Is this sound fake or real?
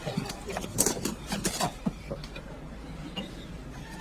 real